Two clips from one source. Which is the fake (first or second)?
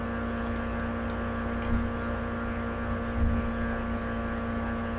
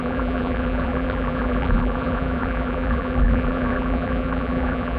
second